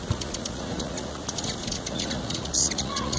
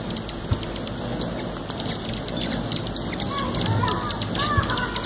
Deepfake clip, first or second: first